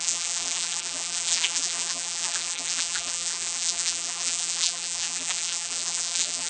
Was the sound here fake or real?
fake